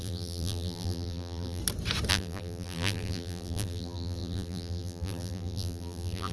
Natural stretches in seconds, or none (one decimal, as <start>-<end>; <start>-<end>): 1.6-2.1